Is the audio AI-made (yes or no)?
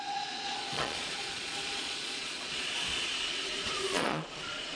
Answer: yes